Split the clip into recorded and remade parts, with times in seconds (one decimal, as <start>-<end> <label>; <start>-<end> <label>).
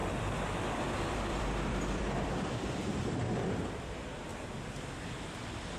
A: 0.0-3.5 remade; 3.5-5.8 recorded